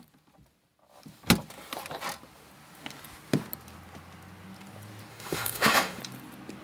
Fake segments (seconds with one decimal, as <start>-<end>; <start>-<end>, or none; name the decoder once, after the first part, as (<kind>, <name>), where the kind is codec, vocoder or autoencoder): 5.1-6.0 (autoencoder, DAC-VAE)